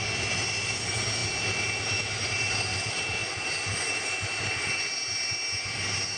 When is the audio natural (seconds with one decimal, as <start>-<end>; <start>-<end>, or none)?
0.0-6.2